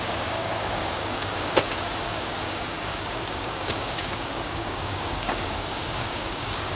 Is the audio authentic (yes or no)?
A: no